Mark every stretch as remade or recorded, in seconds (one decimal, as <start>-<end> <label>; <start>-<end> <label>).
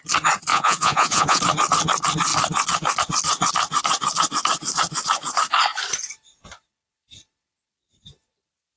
0.0-0.5 recorded; 0.5-1.4 remade; 1.4-8.8 recorded